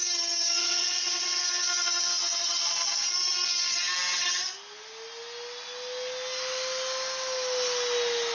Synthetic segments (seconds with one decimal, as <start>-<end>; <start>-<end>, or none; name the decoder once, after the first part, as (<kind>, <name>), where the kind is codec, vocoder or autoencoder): 0.6-1.4 (vocoder, WaveNeXt)